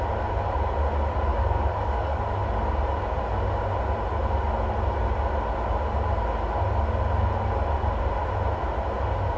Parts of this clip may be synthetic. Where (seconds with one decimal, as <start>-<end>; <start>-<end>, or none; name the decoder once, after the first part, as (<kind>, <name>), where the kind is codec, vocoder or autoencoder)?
1.3-2.2 (codec, DAC)